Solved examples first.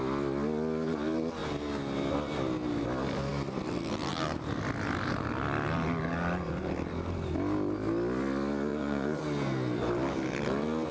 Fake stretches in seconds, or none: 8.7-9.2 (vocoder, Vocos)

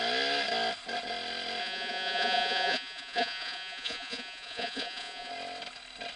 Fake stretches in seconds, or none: 1.6-5.3 (vocoder, Vocos)

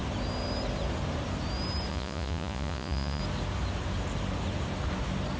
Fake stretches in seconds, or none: 1.9-3.2 (vocoder, Vocos)

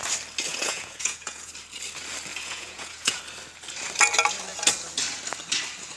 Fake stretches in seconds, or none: 0.5-1.5 (vocoder, Vocos); 2.3-3.2

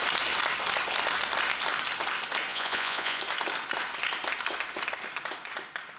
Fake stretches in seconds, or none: 2.5-3.2 (vocoder, Vocos)

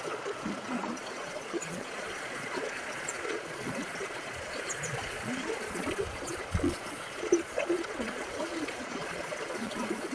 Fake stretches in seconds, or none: 0.0-10.1 (vocoder, Vocos)

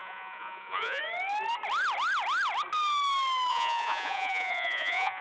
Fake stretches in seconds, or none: 0.0-1.0 (vocoder, Vocos); 3.5-5.2

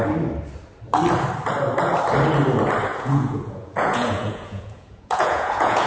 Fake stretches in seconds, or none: 2.9-5.9 (vocoder, Vocos)